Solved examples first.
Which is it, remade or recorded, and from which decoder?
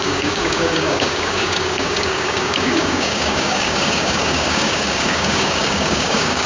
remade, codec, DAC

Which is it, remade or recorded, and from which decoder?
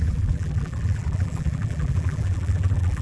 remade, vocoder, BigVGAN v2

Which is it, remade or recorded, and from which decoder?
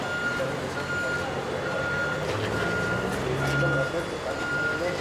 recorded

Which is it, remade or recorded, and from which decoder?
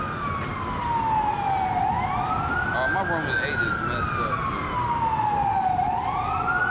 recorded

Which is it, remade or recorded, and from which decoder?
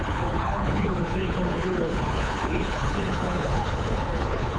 remade, codec, HILCodec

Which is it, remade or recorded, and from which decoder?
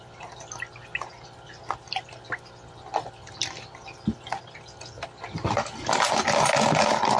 recorded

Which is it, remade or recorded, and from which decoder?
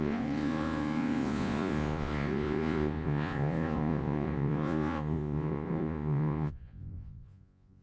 remade, vocoder, Vocos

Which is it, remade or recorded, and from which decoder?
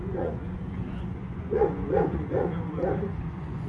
remade, vocoder, Vocos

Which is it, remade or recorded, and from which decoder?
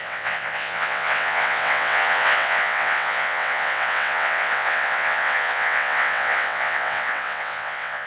remade, vocoder, WaveNeXt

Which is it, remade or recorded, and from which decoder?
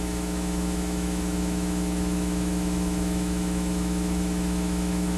remade, autoencoder, DAC-VAE